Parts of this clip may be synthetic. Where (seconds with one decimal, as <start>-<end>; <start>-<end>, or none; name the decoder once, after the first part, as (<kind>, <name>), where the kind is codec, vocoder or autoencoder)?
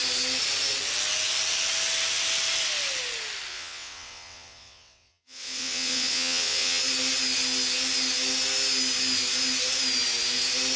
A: 3.5-6.8 (vocoder, WaveNeXt)